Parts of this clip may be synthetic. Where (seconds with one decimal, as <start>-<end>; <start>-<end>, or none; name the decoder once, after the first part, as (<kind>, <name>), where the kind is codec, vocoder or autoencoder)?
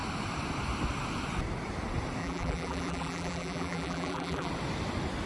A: 2.2-4.5 (vocoder, BigVGAN v2)